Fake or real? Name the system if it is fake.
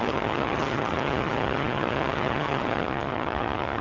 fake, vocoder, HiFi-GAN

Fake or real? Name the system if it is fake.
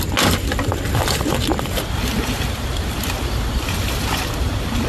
real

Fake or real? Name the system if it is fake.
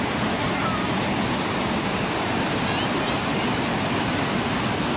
real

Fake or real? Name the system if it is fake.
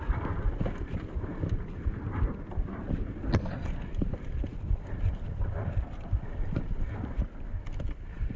real